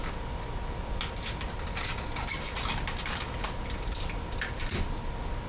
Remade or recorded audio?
recorded